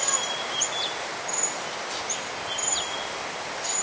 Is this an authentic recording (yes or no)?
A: yes